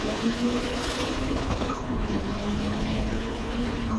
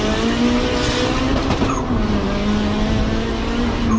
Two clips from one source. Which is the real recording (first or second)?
second